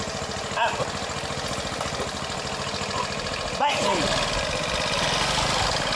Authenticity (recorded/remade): recorded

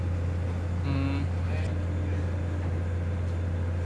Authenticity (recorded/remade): recorded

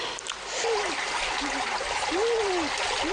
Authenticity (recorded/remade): recorded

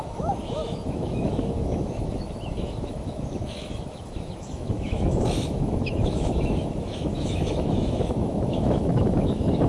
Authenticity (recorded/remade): remade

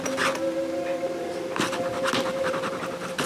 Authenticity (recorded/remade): recorded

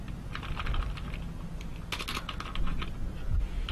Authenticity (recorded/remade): recorded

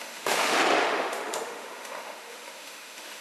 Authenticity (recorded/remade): remade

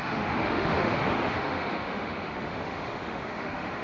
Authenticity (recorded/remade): remade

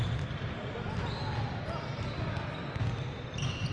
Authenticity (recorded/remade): recorded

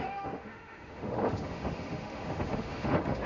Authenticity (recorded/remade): remade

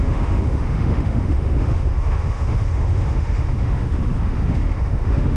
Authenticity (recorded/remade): remade